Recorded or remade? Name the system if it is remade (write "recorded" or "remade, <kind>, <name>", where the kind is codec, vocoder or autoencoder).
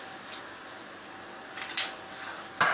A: recorded